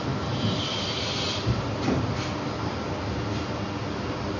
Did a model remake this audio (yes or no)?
no